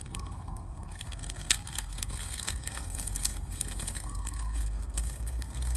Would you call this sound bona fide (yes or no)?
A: no